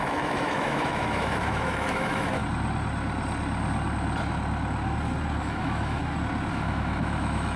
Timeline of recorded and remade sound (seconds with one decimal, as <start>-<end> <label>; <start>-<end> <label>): 0.0-2.4 remade; 2.4-5.4 recorded; 5.4-6.0 remade; 6.0-6.5 recorded; 6.5-7.6 remade